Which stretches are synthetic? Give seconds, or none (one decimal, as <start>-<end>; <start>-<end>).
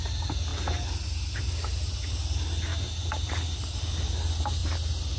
none